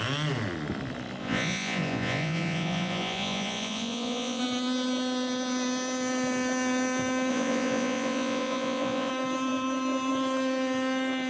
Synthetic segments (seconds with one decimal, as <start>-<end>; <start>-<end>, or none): 1.2-4.4; 7.3-9.1

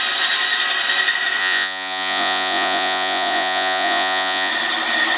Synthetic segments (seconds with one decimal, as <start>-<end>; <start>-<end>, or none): 1.4-4.5

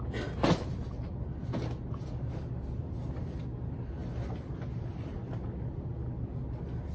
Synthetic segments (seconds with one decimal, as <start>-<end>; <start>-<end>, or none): none